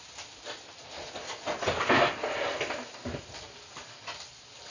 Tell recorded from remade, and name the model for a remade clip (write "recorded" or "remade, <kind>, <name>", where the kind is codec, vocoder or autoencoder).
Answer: remade, vocoder, BigVGAN v2